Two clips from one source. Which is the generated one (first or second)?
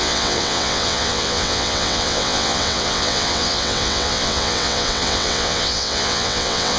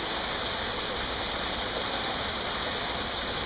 first